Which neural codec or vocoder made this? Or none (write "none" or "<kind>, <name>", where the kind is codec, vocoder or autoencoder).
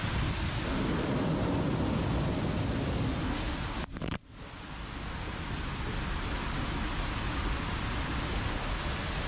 none